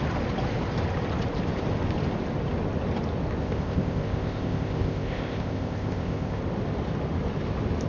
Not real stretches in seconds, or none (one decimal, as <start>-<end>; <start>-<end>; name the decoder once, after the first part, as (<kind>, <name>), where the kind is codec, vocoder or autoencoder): 3.4-6.4 (codec, ZipCodec)